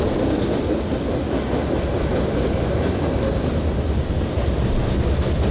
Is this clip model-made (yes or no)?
no